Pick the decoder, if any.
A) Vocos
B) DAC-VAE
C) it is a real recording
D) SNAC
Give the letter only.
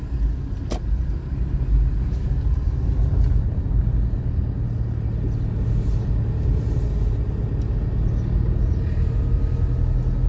C